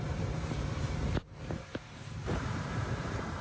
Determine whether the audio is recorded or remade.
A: remade